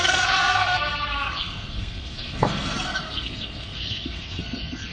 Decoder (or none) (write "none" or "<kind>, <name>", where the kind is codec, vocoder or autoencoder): codec, SNAC